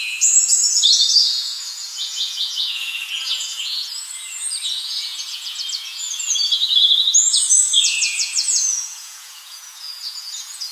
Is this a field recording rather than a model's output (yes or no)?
no